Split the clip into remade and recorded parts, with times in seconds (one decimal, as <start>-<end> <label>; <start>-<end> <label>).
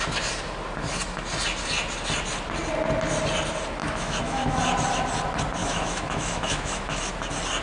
0.0-3.8 recorded; 3.8-4.6 remade; 4.6-5.6 recorded; 5.6-7.0 remade; 7.0-7.6 recorded